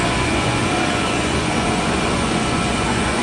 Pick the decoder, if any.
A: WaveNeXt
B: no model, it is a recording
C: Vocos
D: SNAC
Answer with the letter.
C